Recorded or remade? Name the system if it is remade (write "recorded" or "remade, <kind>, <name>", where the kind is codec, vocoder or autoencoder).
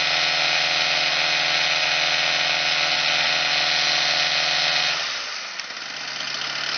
recorded